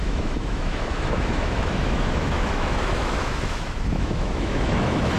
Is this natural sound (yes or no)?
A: no